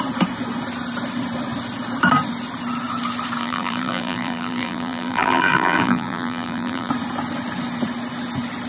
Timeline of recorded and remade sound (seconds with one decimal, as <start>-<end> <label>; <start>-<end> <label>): 0.0-3.4 recorded; 3.4-6.9 remade; 6.9-8.7 recorded